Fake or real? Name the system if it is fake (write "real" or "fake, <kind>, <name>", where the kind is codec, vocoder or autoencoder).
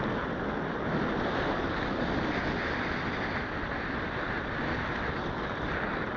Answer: real